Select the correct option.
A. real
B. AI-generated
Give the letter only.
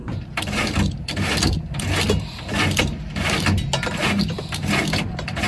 A